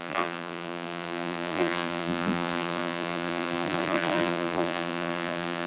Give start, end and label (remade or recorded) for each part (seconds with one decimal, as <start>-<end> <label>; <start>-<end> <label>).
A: 0.0-5.7 remade